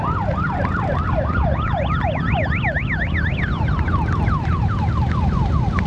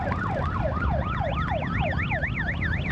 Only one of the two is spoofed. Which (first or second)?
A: second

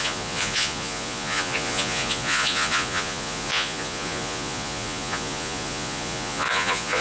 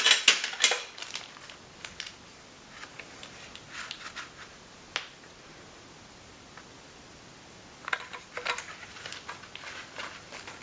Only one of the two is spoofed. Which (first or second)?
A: first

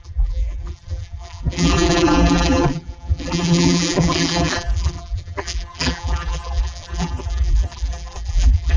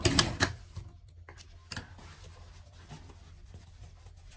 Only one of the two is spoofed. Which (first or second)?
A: first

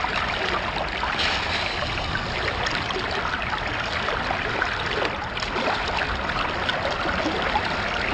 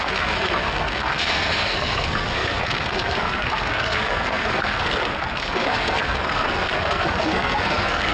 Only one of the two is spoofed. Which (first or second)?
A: second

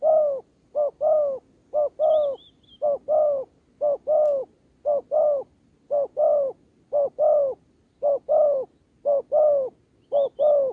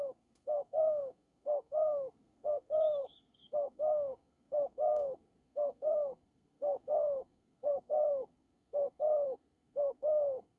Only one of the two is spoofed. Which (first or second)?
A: second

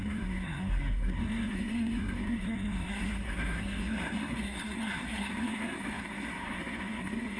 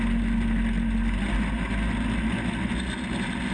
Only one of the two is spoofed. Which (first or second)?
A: first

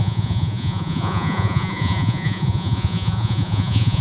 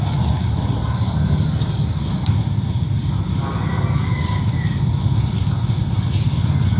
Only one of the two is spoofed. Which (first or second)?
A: first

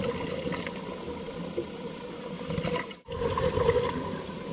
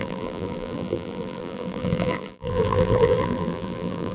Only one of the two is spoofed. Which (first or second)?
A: second